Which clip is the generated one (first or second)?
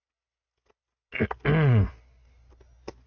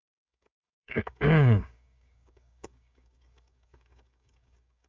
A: second